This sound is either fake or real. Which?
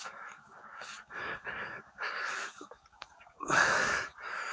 fake